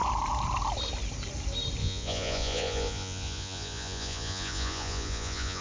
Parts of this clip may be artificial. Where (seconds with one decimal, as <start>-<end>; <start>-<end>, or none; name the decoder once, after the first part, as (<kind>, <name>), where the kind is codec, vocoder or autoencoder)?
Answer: 1.8-5.6 (vocoder, Vocos)